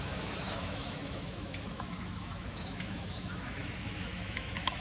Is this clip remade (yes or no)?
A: yes